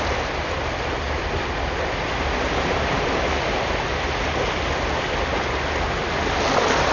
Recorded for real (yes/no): yes